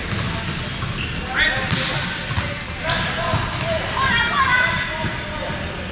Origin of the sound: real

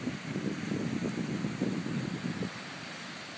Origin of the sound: real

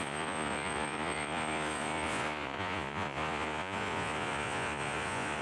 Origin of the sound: fake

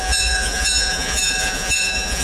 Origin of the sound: fake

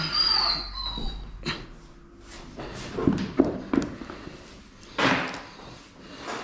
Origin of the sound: real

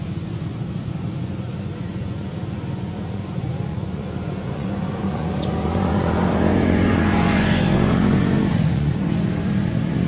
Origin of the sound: fake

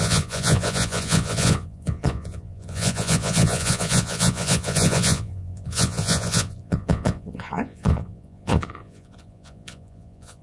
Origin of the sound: fake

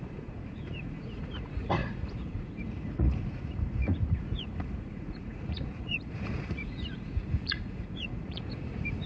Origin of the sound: fake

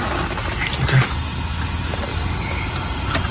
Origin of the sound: real